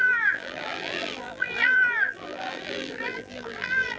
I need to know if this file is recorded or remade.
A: remade